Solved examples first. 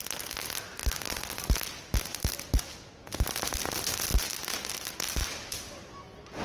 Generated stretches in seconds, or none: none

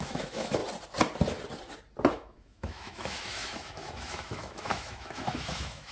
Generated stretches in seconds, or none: 0.0-0.6 (autoencoder, DAC-VAE); 2.1-5.9

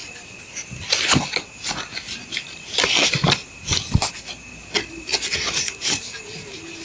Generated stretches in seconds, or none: none